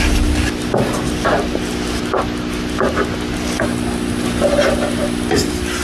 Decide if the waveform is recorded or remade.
recorded